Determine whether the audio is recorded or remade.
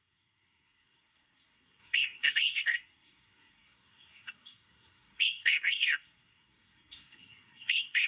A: remade